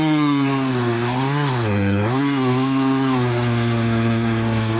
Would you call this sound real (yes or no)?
no